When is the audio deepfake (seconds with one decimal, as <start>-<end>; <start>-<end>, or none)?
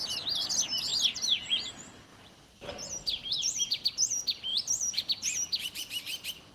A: 2.1-2.7; 3.1-3.8; 4.5-5.0